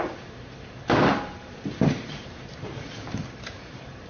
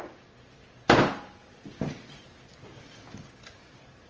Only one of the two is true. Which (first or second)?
second